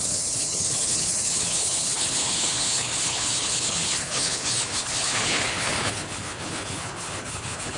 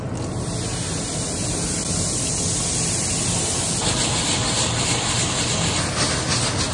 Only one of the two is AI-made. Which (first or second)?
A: first